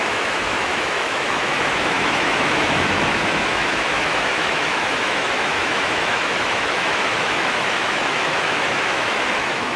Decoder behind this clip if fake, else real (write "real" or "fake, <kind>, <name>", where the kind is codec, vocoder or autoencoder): fake, autoencoder, DAC-VAE